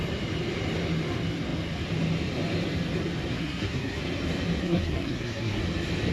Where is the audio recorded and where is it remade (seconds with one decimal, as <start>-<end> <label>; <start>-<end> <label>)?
0.0-3.3 recorded; 3.3-4.0 remade; 4.0-4.6 recorded; 4.6-5.6 remade; 5.6-6.1 recorded

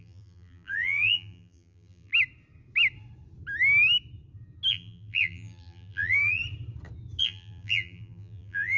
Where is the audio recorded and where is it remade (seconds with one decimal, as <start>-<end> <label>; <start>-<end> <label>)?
0.0-2.1 remade; 2.1-4.7 recorded; 4.7-6.4 remade; 6.4-7.2 recorded; 7.2-8.8 remade

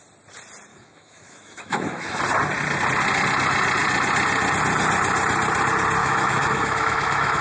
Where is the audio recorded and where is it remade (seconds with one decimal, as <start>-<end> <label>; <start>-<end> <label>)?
0.0-0.7 recorded; 0.7-2.2 remade; 2.2-6.0 recorded; 6.0-7.4 remade